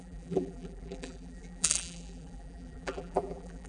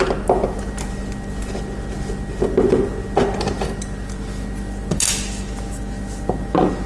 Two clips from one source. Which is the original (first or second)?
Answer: second